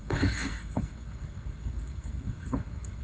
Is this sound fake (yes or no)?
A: yes